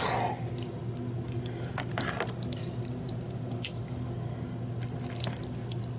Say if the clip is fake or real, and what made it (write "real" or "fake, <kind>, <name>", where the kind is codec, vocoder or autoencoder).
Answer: real